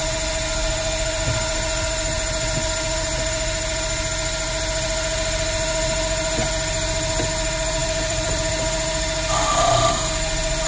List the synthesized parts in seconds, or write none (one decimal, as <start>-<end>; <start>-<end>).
7.8-8.5